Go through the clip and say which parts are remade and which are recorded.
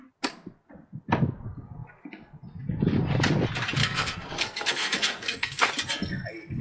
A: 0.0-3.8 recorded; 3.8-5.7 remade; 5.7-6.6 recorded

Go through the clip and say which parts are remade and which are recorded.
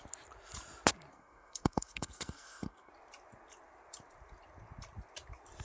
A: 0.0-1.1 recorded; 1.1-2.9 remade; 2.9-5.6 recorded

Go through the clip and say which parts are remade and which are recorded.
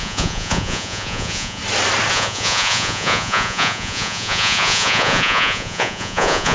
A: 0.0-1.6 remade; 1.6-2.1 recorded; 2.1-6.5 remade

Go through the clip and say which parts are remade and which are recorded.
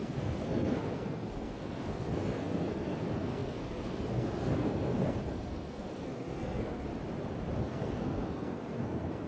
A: 0.0-6.9 remade; 6.9-7.6 recorded; 7.6-9.3 remade